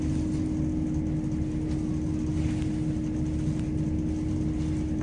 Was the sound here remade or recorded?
recorded